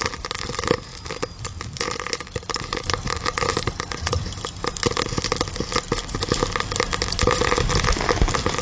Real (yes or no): yes